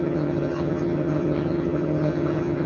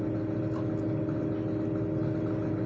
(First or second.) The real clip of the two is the second